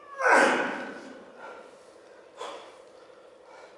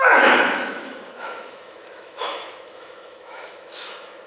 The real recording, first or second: first